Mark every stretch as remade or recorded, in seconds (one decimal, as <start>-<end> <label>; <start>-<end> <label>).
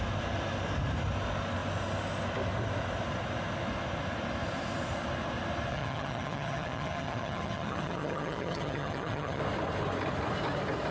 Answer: 0.0-5.7 recorded; 5.7-9.4 remade; 9.4-10.9 recorded